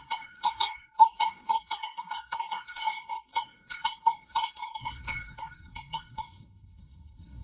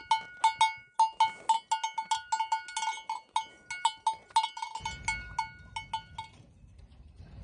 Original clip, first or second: second